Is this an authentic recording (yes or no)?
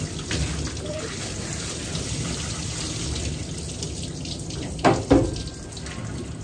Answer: yes